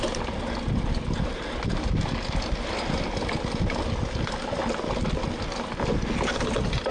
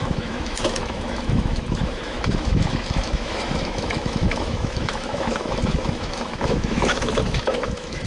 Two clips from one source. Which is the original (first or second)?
first